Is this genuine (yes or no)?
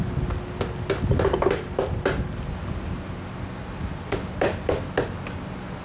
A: yes